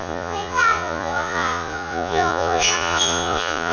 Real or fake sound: fake